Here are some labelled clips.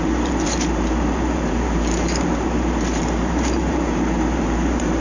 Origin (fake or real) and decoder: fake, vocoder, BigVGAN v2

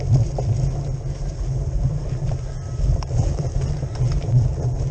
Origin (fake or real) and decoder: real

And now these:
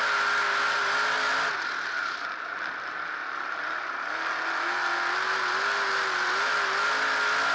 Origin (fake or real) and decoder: real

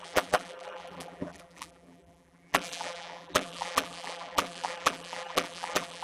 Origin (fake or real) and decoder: fake, vocoder, BigVGAN v2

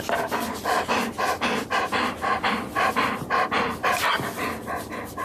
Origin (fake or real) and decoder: real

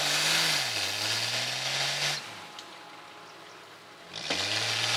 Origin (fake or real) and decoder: real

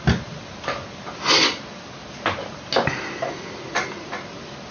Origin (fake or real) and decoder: real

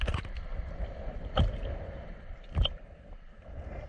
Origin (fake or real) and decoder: real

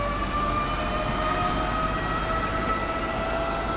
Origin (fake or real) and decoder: real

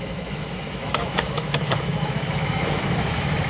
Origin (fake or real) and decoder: fake, autoencoder, DAC-VAE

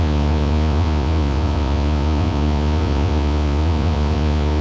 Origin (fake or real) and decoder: fake, vocoder, Vocos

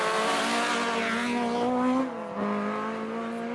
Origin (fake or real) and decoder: real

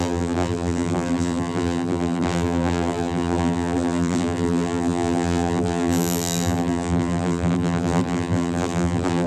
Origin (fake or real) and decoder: fake, vocoder, BigVGAN v2